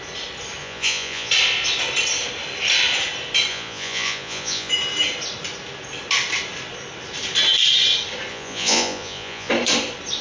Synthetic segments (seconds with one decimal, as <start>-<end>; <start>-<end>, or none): 0.6-1.3; 3.5-4.7; 8.3-9.5